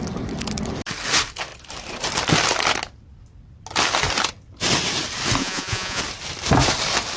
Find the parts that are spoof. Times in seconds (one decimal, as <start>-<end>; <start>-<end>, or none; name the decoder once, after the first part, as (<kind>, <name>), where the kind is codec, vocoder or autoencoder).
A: 5.4-6.0 (vocoder, Vocos)